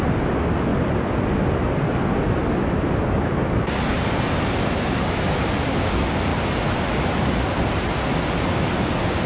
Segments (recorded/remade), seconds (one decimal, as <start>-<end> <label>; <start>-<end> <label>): 0.0-0.7 recorded; 0.7-1.3 remade; 1.3-9.3 recorded